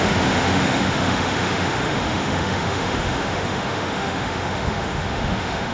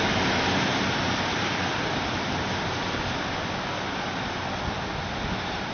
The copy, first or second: first